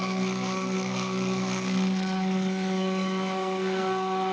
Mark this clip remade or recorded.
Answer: remade